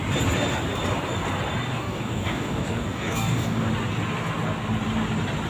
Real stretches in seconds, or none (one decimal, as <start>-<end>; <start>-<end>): 0.0-1.7; 3.7-5.5